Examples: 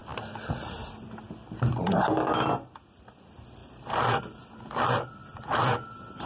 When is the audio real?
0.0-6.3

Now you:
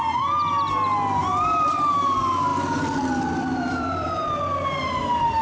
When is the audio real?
0.0-1.3; 1.9-2.5; 4.3-5.4

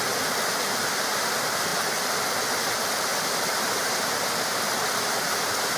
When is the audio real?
0.0-3.1; 4.7-5.8

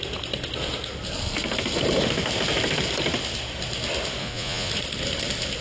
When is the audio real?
0.0-4.2; 4.7-5.6